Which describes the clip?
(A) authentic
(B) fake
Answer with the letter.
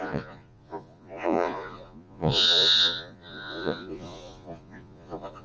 B